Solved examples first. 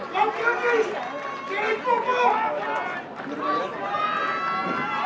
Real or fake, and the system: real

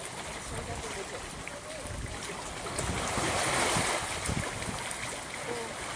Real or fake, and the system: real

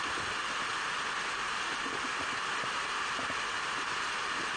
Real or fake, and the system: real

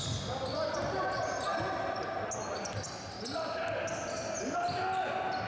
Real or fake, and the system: real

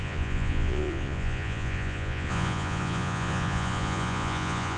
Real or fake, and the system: fake, vocoder, Vocos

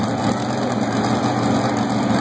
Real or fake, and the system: real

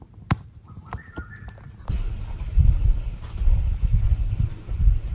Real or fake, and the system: real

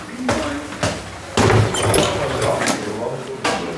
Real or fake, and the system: real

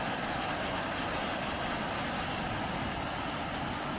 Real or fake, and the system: real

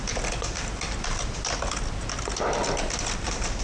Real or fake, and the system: real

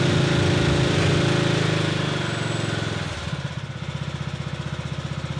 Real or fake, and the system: real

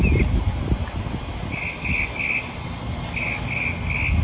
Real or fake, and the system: real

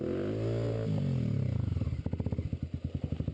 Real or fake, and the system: real